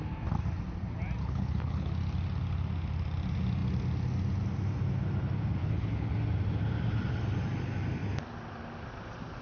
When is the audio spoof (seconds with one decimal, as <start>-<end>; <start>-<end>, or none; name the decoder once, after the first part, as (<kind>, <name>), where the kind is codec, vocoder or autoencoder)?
1.2-1.9 (codec, HILCodec); 5.6-6.1